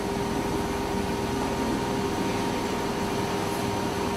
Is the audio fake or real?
real